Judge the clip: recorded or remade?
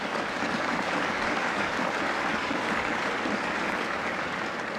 remade